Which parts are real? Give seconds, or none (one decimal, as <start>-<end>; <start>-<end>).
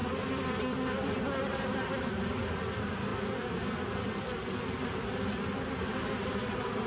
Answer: 0.0-2.7; 3.1-6.2